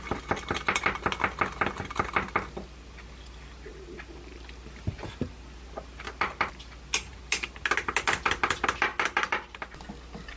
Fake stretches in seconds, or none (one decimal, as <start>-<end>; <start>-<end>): none